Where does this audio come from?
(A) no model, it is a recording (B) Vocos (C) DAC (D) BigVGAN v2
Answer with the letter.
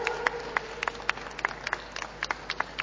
A